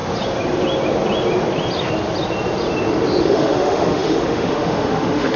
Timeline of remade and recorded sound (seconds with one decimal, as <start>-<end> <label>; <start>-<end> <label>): 0.0-3.2 recorded; 3.2-5.4 remade